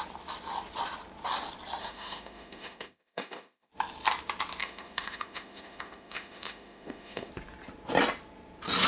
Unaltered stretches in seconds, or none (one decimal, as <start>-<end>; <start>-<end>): 0.0-1.8; 3.7-4.6; 7.3-8.9